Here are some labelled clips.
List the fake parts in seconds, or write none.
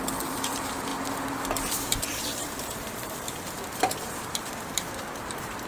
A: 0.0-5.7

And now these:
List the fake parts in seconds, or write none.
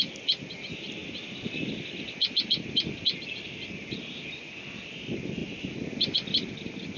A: none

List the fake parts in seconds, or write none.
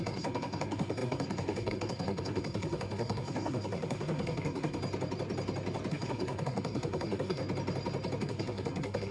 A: 0.0-4.8; 5.9-7.4; 8.2-9.1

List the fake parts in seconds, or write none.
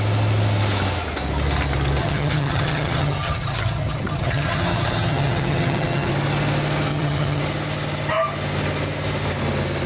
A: 2.0-6.1; 6.9-7.4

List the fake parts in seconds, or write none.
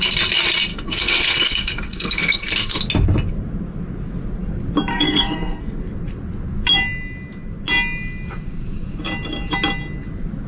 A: 0.7-2.8; 4.9-5.8